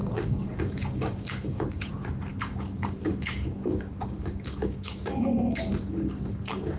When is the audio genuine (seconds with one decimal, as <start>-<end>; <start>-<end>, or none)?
1.9-2.3